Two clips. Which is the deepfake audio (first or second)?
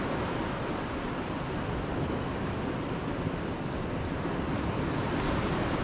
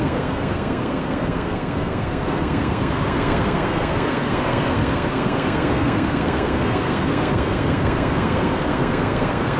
second